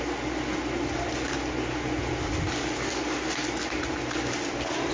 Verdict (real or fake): real